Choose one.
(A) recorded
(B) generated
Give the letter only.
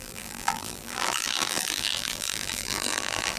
B